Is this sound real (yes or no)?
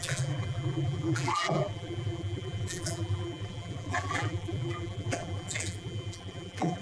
no